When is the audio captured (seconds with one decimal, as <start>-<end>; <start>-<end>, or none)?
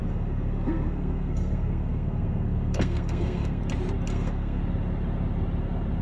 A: 3.6-4.1; 4.6-6.0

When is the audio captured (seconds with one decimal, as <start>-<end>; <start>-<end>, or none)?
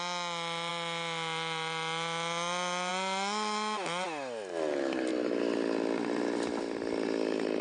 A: 0.0-7.6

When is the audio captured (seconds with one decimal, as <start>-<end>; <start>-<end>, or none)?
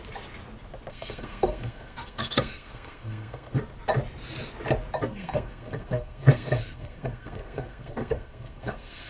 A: 0.0-0.9; 3.6-5.1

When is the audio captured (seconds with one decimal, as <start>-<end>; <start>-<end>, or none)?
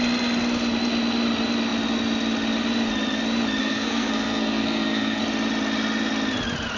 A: 0.0-3.6; 5.2-6.8